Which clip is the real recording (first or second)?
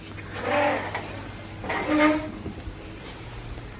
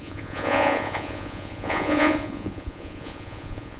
first